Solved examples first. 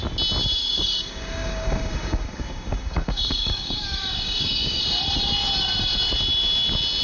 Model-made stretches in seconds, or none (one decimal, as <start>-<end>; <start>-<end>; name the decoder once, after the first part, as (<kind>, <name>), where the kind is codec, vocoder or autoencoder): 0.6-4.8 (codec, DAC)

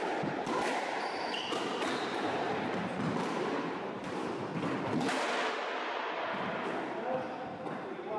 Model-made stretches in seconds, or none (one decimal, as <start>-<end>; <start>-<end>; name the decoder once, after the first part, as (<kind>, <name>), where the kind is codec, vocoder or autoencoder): 0.0-4.5 (vocoder, BigVGAN v2); 7.2-8.2

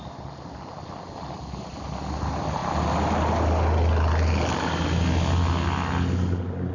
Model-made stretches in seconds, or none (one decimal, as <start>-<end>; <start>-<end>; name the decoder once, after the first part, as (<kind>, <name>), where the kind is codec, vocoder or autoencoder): none

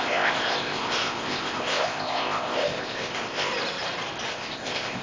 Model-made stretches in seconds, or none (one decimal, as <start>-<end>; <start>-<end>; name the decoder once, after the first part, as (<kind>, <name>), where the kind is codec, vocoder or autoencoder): 0.0-3.5 (codec, ZipCodec); 4.3-5.0